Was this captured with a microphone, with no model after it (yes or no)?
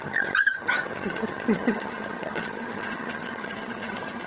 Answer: no